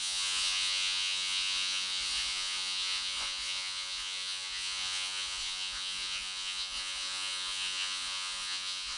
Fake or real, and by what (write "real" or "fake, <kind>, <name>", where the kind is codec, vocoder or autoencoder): fake, vocoder, Vocos